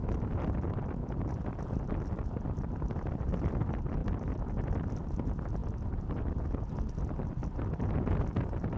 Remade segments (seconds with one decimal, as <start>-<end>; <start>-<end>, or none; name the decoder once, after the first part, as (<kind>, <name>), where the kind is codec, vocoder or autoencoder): 1.0-1.8 (vocoder, BigVGAN v2); 4.0-4.7